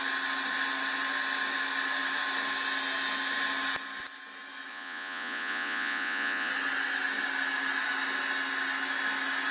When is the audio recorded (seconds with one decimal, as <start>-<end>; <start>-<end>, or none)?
0.0-4.7; 6.5-9.5